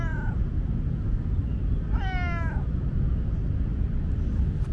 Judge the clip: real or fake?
real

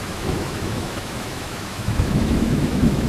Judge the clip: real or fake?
fake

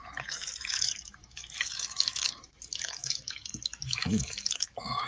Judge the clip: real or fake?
fake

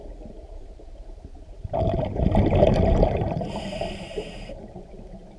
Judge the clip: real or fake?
fake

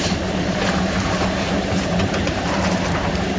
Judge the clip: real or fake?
fake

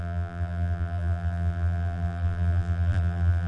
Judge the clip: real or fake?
fake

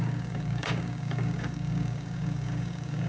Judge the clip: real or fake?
fake